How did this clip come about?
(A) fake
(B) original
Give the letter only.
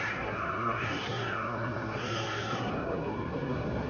A